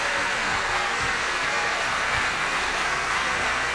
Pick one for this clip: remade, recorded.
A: remade